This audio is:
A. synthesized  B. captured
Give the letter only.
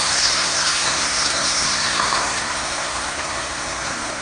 A